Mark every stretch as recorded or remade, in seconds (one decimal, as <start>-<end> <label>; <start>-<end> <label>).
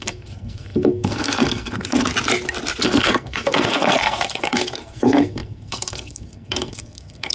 0.0-2.1 remade; 2.1-2.8 recorded; 2.8-7.3 remade